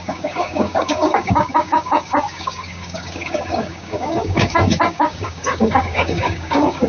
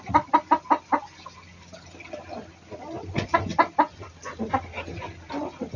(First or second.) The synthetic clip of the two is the first